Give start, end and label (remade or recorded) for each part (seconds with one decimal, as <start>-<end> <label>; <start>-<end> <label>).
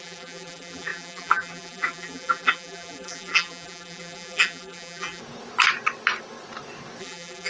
0.0-5.2 remade; 5.2-7.0 recorded; 7.0-7.5 remade